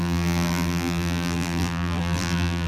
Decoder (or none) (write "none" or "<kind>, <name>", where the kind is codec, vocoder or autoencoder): vocoder, BigVGAN v2